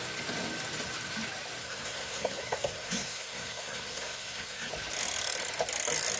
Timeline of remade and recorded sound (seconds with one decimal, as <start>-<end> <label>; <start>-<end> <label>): 0.0-1.6 recorded; 1.6-4.7 remade; 4.7-6.2 recorded